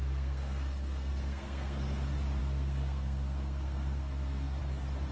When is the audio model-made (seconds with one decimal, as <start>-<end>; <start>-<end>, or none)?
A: 0.0-1.8; 2.4-4.6

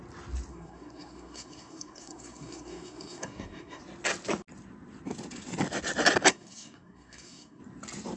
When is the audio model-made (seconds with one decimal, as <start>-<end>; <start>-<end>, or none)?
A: 0.5-3.8; 6.3-7.6

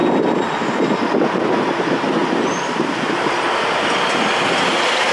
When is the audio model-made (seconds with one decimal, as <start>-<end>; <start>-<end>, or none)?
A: none

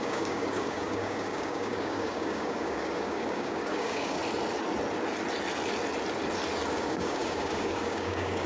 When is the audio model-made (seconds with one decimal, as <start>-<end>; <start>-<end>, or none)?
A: 0.0-4.2; 6.7-8.5